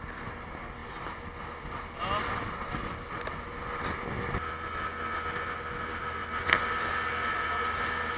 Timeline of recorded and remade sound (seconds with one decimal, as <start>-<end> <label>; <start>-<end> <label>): 0.0-6.2 recorded; 6.2-6.9 remade; 6.9-8.2 recorded